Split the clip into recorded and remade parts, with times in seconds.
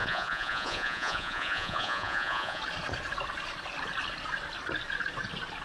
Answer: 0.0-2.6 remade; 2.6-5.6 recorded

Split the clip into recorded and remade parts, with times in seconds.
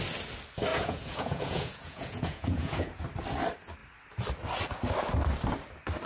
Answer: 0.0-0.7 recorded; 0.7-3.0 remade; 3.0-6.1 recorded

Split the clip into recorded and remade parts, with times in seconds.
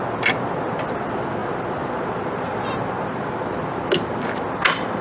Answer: 0.0-5.0 recorded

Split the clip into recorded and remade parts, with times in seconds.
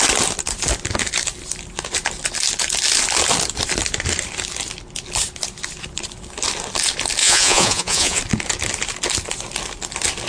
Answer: 0.0-7.2 recorded; 7.2-8.2 remade; 8.2-10.3 recorded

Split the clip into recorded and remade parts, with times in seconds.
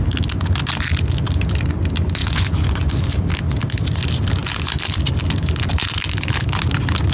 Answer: 0.0-2.2 recorded; 2.2-2.9 remade; 2.9-7.1 recorded